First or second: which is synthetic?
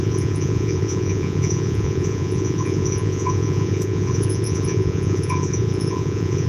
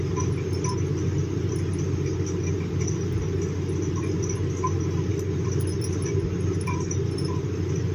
first